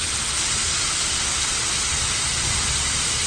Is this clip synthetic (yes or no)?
no